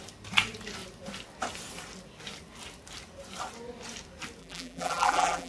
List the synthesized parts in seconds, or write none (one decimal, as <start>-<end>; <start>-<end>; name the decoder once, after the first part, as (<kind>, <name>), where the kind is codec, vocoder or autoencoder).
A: 4.4-5.5 (vocoder, BigVGAN v2)